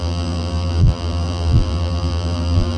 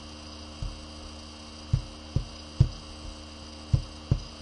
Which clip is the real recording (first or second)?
second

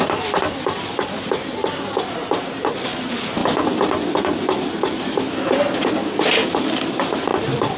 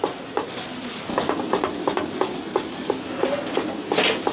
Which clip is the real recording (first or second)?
second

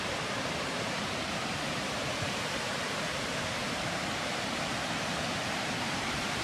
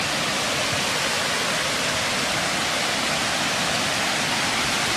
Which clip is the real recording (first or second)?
second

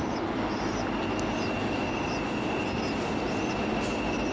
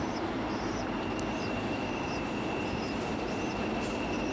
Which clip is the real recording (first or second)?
first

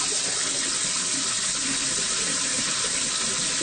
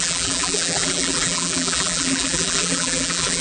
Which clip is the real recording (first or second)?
first